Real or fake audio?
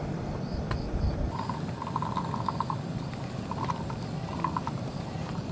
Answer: real